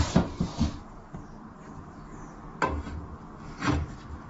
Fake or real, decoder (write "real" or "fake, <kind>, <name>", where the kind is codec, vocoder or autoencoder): real